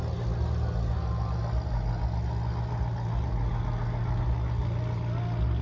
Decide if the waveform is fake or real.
real